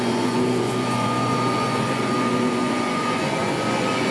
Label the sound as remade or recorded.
remade